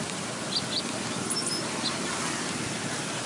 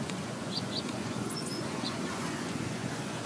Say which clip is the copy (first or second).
second